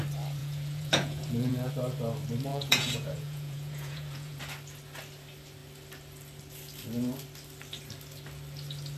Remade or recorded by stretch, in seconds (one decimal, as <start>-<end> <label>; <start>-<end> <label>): 0.0-0.4 recorded; 0.4-1.7 remade; 1.7-2.5 recorded; 2.5-4.4 remade; 4.4-9.0 recorded